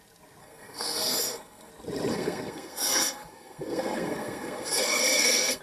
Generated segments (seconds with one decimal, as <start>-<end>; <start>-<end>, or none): 0.4-1.7; 2.1-5.6